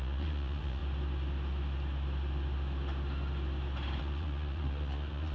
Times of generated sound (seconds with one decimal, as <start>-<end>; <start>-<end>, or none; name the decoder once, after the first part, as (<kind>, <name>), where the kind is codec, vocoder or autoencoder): 0.0-0.8 (vocoder, Vocos); 4.0-5.3